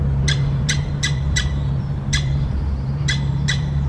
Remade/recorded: remade